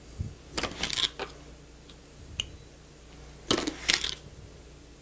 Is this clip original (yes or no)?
yes